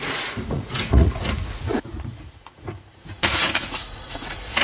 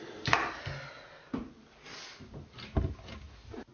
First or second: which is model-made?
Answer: first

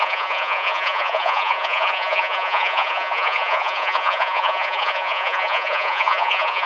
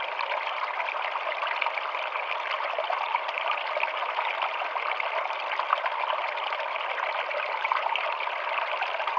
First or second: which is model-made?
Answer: first